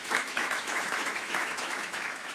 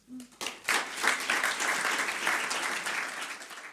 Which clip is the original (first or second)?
second